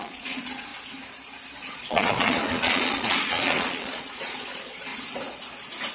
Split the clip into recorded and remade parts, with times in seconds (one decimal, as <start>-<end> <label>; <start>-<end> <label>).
0.0-0.7 remade; 0.7-1.7 recorded; 1.7-4.9 remade; 4.9-5.9 recorded